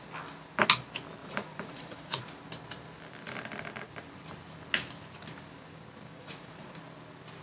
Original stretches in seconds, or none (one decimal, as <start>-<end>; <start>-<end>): 0.0-1.2; 2.2-6.1; 6.7-7.4